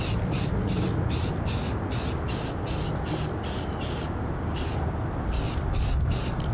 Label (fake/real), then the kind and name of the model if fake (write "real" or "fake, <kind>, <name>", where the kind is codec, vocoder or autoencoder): real